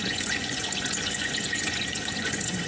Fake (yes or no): yes